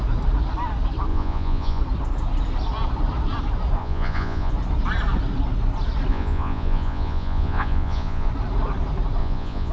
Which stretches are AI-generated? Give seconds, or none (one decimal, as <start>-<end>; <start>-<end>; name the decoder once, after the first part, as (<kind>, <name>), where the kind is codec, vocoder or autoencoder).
1.1-1.8 (vocoder, Vocos); 3.8-4.5; 6.1-8.3; 9.2-9.7